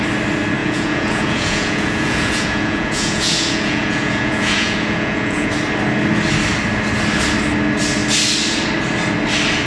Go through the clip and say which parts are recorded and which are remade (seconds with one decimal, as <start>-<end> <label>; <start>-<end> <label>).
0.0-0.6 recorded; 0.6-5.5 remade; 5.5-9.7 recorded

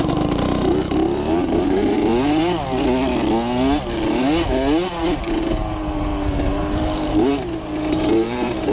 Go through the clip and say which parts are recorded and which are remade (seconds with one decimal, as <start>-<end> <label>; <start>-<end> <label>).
0.0-2.1 remade; 2.1-5.2 recorded; 5.2-8.7 remade

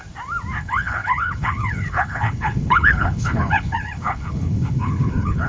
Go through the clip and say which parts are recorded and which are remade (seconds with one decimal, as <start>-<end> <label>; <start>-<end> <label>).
0.0-0.6 recorded; 0.6-5.5 remade

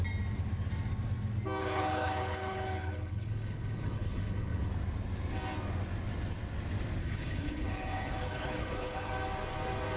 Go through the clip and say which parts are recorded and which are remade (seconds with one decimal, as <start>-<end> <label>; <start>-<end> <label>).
0.0-1.6 recorded; 1.6-4.7 remade; 4.7-7.0 recorded; 7.0-9.1 remade; 9.1-10.0 recorded